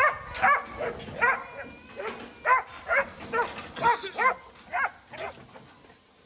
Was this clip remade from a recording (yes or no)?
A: no